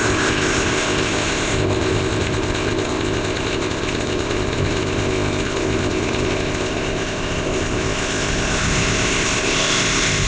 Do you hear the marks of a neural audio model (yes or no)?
yes